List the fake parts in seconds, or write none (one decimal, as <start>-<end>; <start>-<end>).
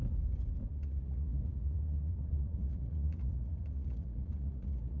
0.7-5.0